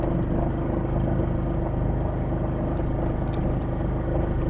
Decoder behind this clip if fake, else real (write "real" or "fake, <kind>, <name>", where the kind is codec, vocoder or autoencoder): real